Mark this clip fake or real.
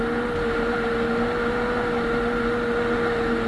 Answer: real